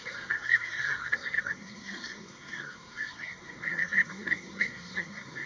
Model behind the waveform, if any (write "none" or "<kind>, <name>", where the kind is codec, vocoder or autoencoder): codec, SNAC